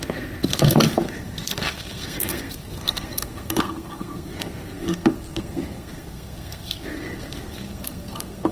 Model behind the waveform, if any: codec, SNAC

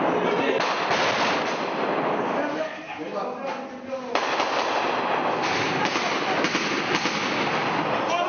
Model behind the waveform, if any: none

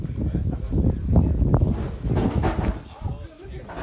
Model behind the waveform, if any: none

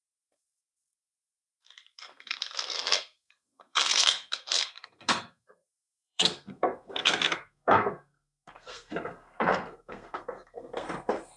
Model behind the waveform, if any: codec, SNAC